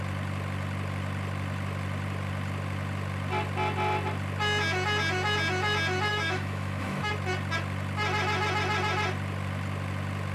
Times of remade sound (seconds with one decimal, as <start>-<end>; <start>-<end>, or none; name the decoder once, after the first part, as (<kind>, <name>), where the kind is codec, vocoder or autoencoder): 6.1-7.1 (autoencoder, DAC-VAE)